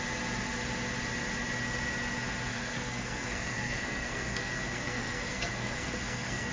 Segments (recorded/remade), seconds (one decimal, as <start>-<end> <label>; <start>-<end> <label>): 0.0-2.5 recorded; 2.5-6.5 remade